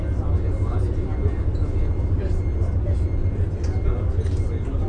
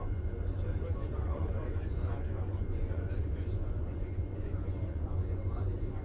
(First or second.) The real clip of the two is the first